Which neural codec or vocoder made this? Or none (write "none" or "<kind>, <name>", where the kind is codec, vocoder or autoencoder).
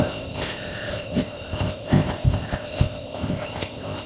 codec, ZipCodec